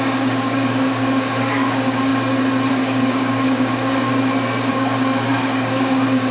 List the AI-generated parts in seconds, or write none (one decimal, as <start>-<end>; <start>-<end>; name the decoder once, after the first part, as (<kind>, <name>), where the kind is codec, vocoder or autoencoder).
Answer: 0.0-2.1 (codec, DAC); 2.7-4.1; 4.7-6.3